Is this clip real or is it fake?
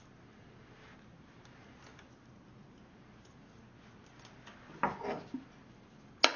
real